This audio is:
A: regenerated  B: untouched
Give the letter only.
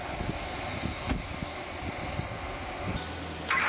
B